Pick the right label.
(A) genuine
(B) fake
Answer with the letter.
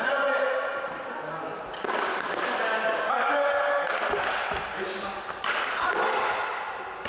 A